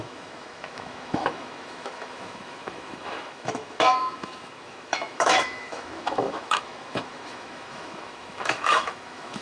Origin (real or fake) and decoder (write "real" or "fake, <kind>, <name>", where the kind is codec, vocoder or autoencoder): fake, autoencoder, DAC-VAE